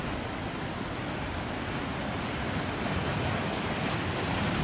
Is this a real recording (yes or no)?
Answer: yes